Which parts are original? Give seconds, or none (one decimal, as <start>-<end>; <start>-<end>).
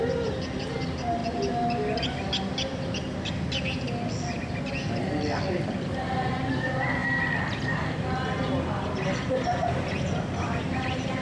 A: 0.0-11.2